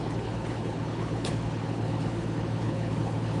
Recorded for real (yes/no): no